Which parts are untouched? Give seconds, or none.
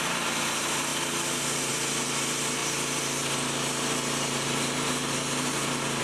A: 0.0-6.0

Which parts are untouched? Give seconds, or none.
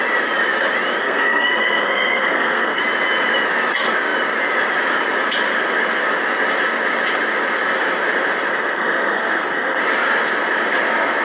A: 0.0-1.0; 2.8-8.5; 9.8-11.2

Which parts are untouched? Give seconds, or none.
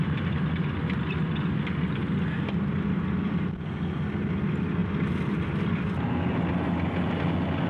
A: 0.0-7.7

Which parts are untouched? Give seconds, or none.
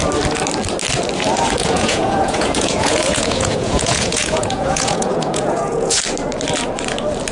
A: 0.0-1.6; 6.0-7.3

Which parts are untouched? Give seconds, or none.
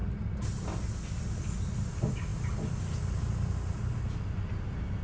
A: 0.0-5.0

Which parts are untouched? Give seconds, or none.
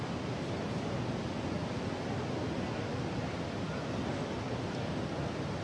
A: 0.0-5.6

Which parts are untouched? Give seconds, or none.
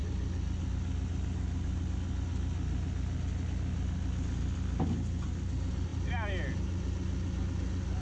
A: 0.0-8.0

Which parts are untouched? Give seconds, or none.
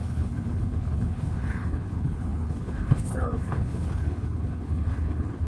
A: none